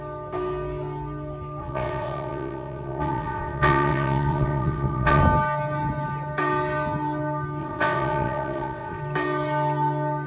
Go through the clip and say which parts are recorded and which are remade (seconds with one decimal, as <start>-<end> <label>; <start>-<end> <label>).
0.0-1.6 recorded; 1.6-5.2 remade; 5.2-7.6 recorded; 7.6-9.0 remade; 9.0-10.3 recorded